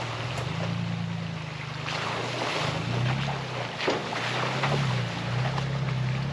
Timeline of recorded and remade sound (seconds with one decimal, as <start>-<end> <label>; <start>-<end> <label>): 0.0-6.3 recorded